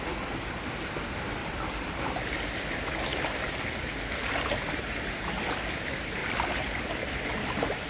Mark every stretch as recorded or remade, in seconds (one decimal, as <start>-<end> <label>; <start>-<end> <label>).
0.0-1.4 recorded; 1.4-2.7 remade; 2.7-3.1 recorded; 3.1-3.7 remade; 3.7-7.9 recorded